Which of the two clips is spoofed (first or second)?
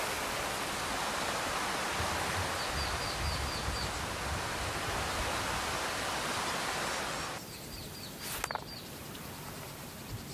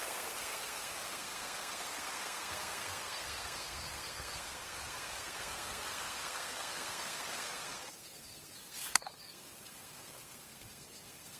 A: second